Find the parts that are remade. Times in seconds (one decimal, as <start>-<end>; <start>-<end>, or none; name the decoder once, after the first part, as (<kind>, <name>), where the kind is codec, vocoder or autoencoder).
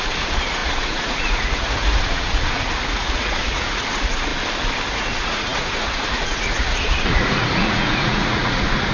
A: 0.0-4.3 (vocoder, Vocos); 4.9-8.9